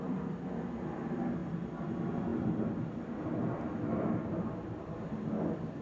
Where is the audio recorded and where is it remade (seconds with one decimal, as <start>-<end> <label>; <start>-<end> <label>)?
0.0-5.8 recorded